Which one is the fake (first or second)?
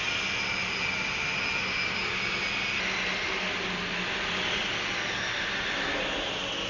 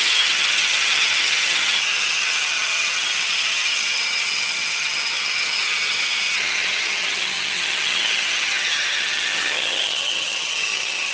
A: second